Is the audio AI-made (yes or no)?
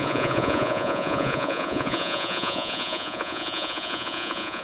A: yes